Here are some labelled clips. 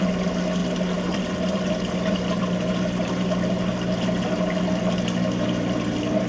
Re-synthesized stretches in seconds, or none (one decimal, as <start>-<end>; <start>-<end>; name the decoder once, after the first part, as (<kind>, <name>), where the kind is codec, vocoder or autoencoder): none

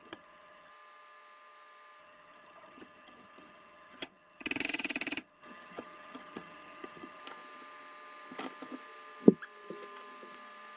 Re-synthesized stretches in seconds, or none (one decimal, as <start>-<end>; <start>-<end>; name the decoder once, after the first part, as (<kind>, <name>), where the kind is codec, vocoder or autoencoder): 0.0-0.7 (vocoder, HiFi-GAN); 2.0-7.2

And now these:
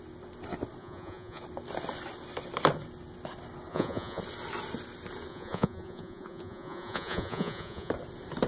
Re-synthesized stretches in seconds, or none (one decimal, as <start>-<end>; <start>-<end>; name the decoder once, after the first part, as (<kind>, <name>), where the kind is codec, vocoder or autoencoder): 0.8-1.4 (vocoder, Vocos); 3.7-4.2; 5.3-7.9

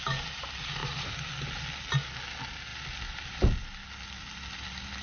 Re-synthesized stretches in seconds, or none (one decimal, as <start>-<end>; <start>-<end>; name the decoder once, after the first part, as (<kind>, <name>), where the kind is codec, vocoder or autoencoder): 2.7-3.4 (vocoder, BigVGAN v2)